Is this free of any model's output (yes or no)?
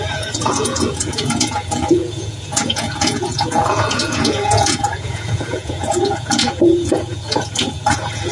no